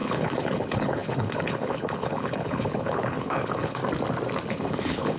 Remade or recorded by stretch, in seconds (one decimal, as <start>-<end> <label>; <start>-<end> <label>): 0.0-3.8 remade; 3.8-4.5 recorded; 4.5-5.2 remade